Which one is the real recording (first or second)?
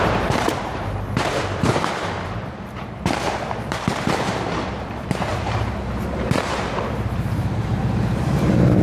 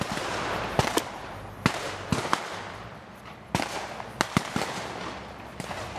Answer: second